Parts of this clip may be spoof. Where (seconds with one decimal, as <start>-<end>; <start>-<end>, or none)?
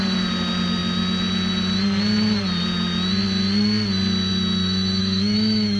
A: 5.0-5.8